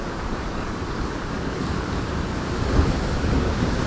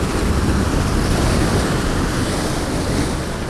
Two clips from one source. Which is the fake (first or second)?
first